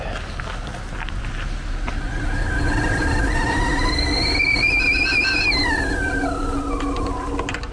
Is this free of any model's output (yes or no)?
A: yes